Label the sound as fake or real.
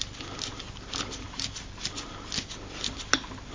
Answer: real